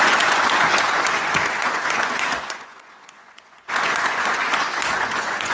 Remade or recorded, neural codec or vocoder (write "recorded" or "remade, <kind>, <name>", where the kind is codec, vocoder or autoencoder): remade, vocoder, Vocos